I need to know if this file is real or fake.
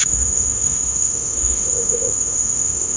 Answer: fake